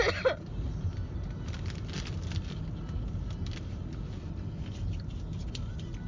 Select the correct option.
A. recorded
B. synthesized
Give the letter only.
A